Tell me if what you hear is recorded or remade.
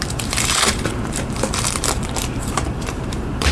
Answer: remade